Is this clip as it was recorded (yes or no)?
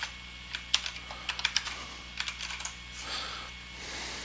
yes